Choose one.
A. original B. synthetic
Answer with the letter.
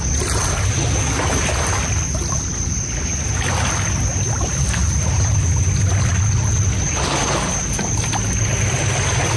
A